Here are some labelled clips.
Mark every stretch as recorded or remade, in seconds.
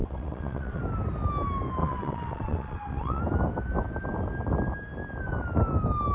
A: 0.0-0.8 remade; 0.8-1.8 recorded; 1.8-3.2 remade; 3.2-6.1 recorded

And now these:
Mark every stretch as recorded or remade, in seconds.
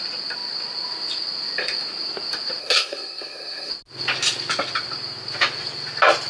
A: 0.0-2.6 recorded; 2.6-3.7 remade; 3.7-6.3 recorded